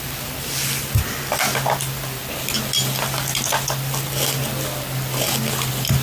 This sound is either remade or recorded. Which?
recorded